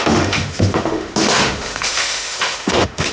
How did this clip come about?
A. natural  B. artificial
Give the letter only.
B